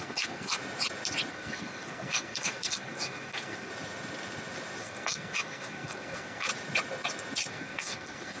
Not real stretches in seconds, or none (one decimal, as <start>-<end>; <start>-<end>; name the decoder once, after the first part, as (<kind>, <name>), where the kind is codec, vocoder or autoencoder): 0.0-0.6 (codec, SNAC); 1.3-3.7; 4.8-6.5; 7.5-8.4